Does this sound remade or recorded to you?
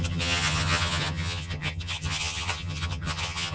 remade